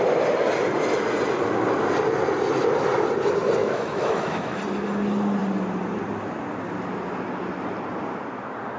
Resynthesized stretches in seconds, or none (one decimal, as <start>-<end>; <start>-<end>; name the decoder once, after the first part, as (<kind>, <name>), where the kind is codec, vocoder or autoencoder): 3.6-4.6 (autoencoder, DAC-VAE)